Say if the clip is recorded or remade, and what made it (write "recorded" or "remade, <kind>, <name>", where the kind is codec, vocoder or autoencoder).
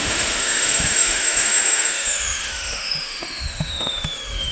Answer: remade, autoencoder, DAC-VAE